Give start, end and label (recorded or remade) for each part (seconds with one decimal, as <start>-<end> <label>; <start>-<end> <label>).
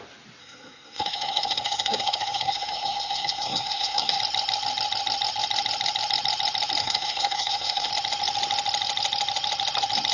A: 0.0-0.4 recorded; 0.4-4.2 remade; 4.2-6.8 recorded; 6.8-7.9 remade; 7.9-10.1 recorded